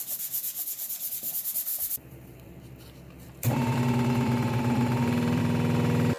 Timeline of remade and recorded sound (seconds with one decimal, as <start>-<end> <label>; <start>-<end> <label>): 0.0-1.7 recorded; 1.7-5.4 remade; 5.4-6.2 recorded